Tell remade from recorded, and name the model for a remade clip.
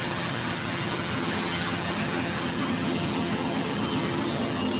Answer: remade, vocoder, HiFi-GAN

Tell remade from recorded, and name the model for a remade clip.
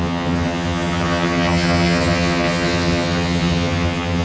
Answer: remade, vocoder, HiFi-GAN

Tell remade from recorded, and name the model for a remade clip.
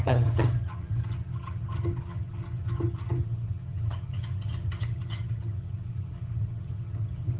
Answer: remade, vocoder, HiFi-GAN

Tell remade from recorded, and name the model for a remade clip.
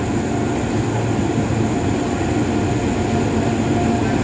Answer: recorded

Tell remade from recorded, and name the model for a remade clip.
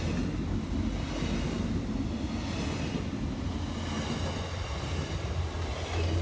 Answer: recorded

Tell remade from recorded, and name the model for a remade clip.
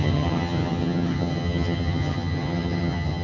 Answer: remade, vocoder, HiFi-GAN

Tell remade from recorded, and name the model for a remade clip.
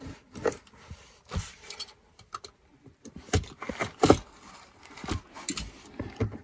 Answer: recorded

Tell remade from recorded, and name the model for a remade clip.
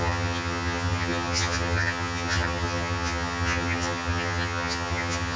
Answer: remade, vocoder, HiFi-GAN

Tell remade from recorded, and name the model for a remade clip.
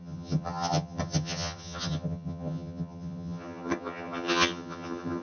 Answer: remade, vocoder, HiFi-GAN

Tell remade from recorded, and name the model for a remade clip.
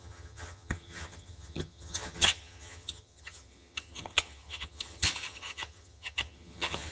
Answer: remade, vocoder, HiFi-GAN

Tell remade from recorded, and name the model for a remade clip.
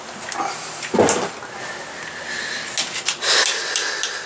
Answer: recorded